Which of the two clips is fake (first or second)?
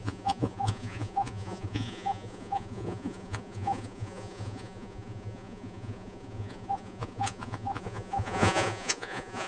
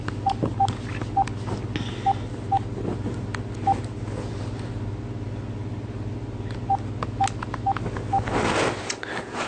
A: first